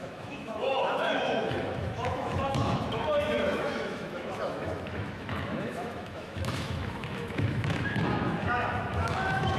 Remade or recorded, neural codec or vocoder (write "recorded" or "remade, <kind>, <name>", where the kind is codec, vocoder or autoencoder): remade, autoencoder, DAC-VAE